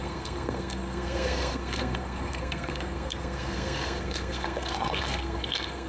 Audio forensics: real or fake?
fake